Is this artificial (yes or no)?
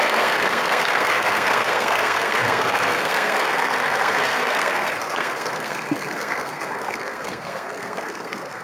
yes